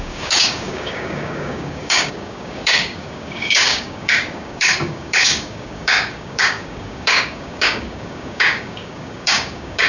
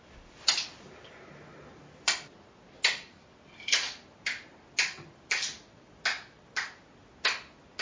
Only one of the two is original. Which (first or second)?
second